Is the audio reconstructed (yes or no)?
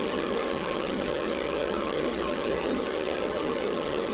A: yes